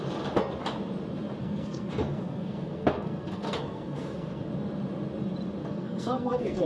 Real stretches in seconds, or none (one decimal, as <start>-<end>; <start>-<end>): 0.0-1.4; 4.5-5.6